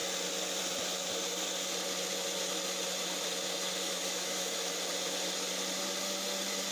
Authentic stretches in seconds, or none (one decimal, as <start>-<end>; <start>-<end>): 0.0-3.8; 4.7-6.7